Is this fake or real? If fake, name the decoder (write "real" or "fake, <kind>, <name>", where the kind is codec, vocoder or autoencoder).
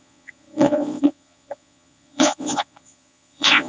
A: fake, vocoder, Vocos